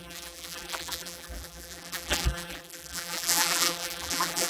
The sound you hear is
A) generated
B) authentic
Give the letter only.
A